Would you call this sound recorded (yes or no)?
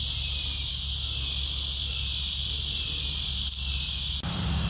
yes